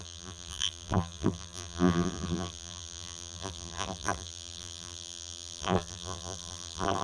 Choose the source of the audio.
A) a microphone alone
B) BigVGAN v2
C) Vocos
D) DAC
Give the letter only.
B